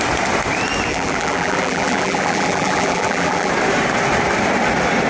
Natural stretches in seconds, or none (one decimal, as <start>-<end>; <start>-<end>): 0.0-0.9; 3.5-5.1